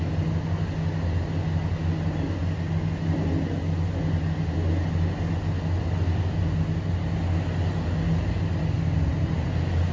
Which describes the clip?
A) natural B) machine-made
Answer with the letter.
A